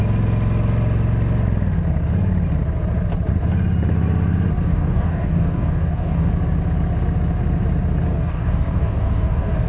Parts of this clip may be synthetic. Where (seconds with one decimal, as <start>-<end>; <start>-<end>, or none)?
4.7-6.3; 8.1-9.7